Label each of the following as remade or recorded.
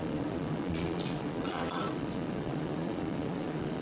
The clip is remade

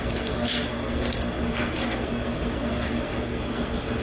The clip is remade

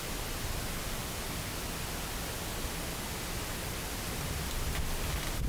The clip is recorded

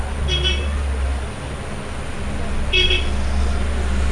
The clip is recorded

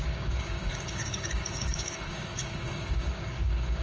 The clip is remade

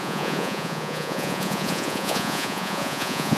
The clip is remade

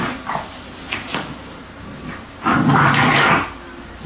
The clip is recorded